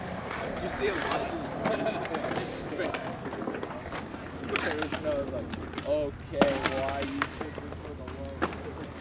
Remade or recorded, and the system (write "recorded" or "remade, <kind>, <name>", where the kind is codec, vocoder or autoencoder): recorded